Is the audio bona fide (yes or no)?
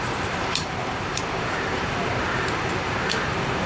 no